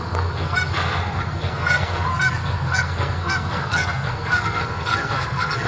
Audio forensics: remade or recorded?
remade